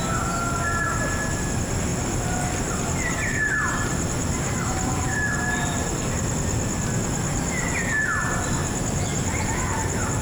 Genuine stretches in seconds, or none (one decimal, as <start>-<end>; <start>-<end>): 0.0-1.9; 6.1-8.6